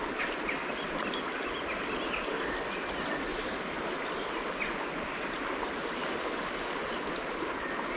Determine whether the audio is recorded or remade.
recorded